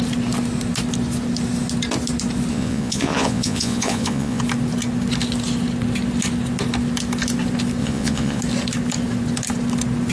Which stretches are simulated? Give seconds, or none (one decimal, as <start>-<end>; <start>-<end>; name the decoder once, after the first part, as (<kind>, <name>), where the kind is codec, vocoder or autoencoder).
2.5-4.4 (vocoder, Vocos); 7.8-8.4